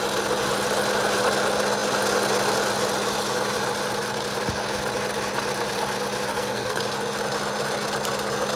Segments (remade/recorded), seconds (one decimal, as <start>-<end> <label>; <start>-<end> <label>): 0.0-6.3 recorded; 6.3-6.8 remade; 6.8-8.6 recorded